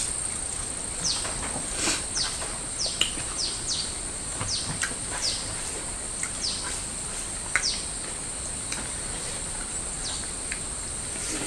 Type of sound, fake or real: real